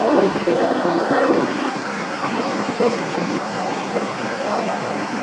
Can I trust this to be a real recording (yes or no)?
no